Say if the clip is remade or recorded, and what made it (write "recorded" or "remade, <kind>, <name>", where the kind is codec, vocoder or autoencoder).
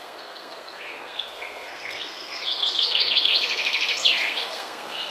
remade, codec, SNAC